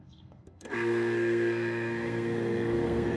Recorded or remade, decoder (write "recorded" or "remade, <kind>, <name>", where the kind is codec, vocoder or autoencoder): remade, codec, SNAC